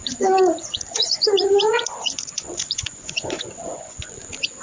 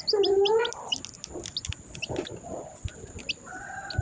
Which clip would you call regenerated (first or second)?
first